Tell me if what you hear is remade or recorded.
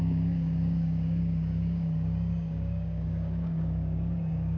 remade